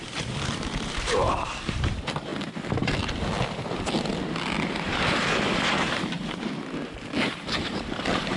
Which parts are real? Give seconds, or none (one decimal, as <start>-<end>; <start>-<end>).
2.3-4.7